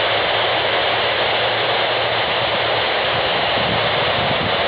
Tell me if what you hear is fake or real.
real